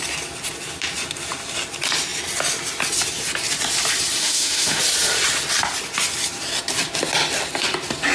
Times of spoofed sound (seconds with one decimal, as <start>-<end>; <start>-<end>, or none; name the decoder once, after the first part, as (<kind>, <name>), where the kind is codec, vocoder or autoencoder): 4.2-4.8 (autoencoder, DAC-VAE)

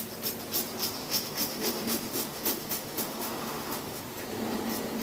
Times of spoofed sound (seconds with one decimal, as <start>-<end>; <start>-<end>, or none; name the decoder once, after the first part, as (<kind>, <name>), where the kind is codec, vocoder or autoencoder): 1.0-4.0 (autoencoder, DAC-VAE)

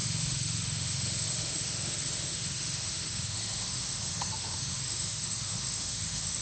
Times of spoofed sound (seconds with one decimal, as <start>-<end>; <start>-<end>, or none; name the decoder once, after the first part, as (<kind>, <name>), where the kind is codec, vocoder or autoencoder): 0.0-6.4 (autoencoder, DAC-VAE)

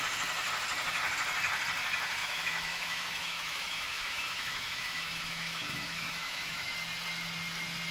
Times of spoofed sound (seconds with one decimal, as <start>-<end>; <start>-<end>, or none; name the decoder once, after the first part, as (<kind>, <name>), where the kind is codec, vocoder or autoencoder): 2.2-6.7 (autoencoder, DAC-VAE)

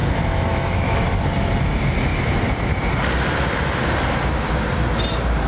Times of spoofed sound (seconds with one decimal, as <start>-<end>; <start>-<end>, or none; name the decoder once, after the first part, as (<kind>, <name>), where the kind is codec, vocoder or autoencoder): 0.0-1.0 (autoencoder, DAC-VAE)

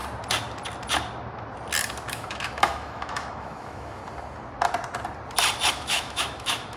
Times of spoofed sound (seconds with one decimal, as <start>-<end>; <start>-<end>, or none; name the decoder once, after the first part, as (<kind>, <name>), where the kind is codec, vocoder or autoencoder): 2.1-4.0 (autoencoder, DAC-VAE); 5.7-6.8

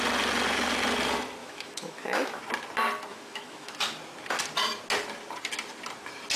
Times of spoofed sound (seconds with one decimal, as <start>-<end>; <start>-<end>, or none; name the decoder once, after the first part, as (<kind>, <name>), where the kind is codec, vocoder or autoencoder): 1.4-2.4 (autoencoder, DAC-VAE); 3.1-3.7

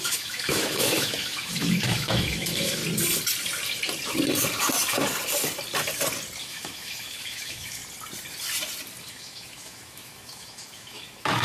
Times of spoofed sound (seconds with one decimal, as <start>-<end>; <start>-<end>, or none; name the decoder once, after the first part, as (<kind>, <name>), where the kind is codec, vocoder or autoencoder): 0.0-2.8 (autoencoder, DAC-VAE); 6.4-7.8; 9.1-11.4